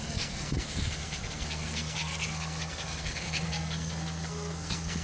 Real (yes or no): no